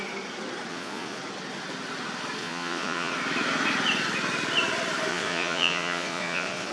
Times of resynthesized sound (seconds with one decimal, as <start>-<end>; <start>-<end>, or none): 0.7-1.2; 2.4-3.1; 5.1-6.7